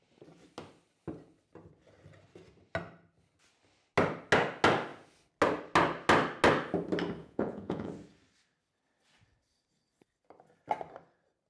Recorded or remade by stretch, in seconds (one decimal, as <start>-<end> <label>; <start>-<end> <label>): 0.0-7.2 recorded; 7.2-7.9 remade; 7.9-11.5 recorded